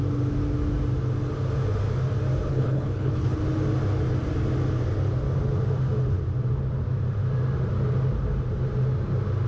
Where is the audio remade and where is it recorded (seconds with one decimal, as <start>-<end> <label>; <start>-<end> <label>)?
0.0-2.5 recorded; 2.5-3.4 remade; 3.4-9.5 recorded